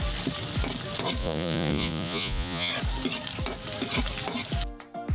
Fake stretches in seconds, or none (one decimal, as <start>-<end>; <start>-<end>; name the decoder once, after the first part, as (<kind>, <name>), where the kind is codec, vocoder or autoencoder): 1.2-2.7 (vocoder, Vocos)